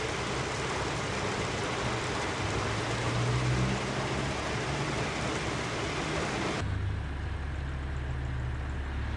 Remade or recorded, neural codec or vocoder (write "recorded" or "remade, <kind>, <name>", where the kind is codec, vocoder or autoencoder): recorded